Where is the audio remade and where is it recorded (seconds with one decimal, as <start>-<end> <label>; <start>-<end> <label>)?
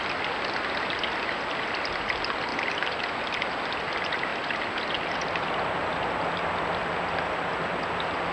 0.0-8.3 recorded